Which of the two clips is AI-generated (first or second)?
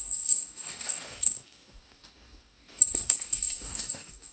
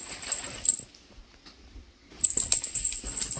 first